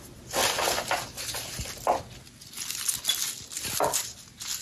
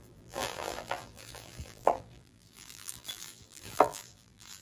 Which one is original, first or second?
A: first